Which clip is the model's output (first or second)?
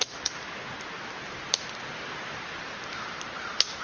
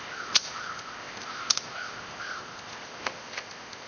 second